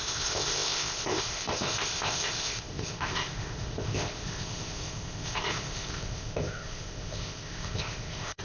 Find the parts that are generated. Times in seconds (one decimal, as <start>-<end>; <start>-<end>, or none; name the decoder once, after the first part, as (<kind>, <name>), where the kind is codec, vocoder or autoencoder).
0.0-8.4 (codec, ZipCodec)